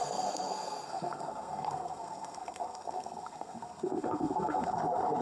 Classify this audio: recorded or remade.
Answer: remade